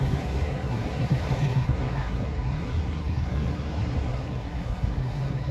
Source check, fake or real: fake